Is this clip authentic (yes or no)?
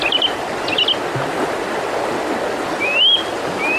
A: yes